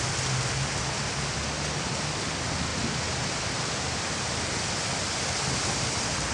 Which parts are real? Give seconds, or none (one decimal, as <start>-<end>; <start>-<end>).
0.0-6.3